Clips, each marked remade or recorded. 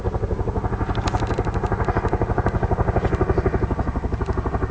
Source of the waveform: recorded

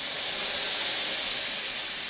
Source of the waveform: recorded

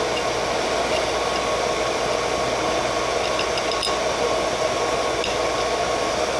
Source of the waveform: recorded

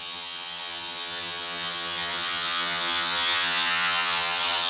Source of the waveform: remade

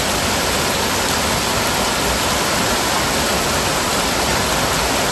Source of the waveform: recorded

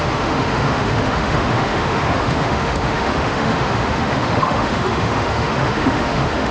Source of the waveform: remade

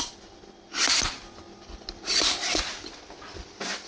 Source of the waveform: recorded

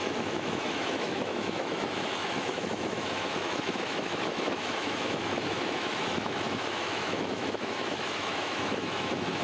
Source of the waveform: remade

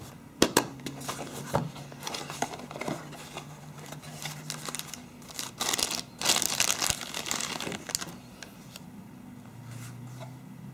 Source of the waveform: recorded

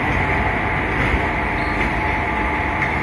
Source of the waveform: recorded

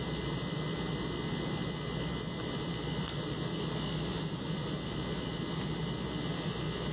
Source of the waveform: recorded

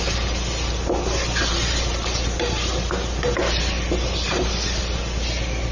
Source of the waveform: recorded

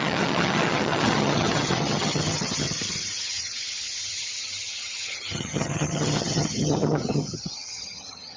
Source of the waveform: remade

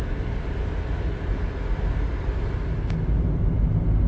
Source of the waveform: recorded